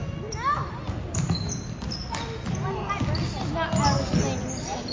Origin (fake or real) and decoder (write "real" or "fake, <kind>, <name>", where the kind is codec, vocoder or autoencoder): real